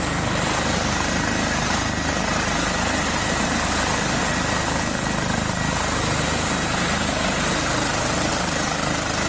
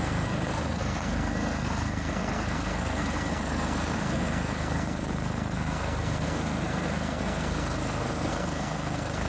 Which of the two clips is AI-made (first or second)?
second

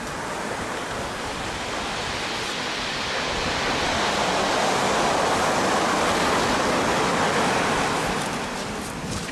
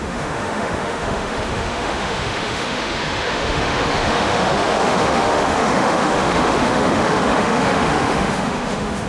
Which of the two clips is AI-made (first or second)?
second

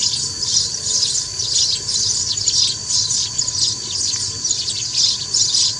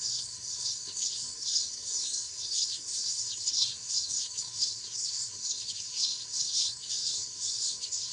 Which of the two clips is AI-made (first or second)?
second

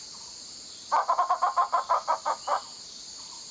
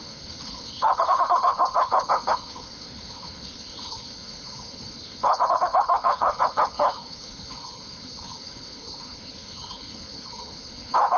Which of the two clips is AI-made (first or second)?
second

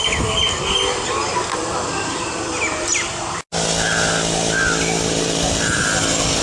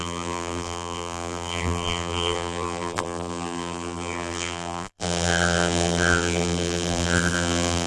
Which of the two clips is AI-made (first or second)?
second